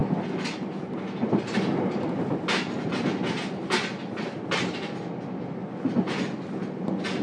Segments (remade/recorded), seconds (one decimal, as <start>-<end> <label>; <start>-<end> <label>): 0.0-7.2 recorded